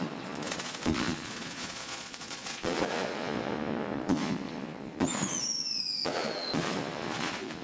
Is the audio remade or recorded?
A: remade